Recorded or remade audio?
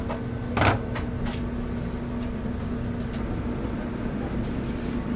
recorded